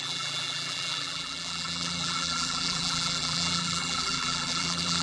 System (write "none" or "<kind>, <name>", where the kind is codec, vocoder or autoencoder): vocoder, BigVGAN v2